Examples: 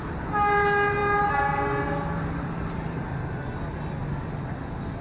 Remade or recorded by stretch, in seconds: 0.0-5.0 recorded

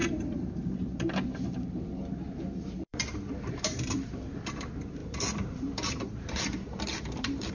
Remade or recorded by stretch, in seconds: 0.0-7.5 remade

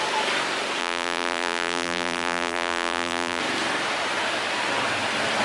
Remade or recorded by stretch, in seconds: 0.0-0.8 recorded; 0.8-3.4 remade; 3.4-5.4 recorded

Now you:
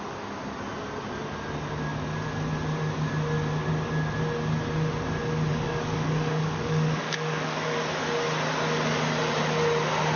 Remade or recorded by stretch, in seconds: 0.0-5.5 recorded; 5.5-7.8 remade; 7.8-10.2 recorded